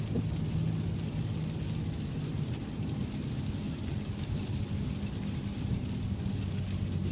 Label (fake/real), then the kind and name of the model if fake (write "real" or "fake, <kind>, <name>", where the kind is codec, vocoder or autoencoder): real